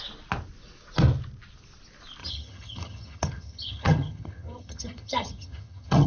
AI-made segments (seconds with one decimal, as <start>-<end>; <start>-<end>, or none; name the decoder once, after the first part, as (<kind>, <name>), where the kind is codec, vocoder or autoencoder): 2.2-6.1 (vocoder, HiFi-GAN)